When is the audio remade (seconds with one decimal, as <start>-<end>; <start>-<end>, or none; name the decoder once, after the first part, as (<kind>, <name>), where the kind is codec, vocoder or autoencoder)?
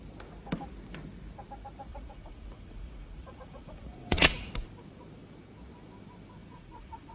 1.9-4.5 (vocoder, Vocos); 6.4-7.1